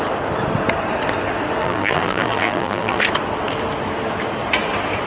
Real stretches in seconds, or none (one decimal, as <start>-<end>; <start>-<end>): 0.0-1.6; 3.0-5.1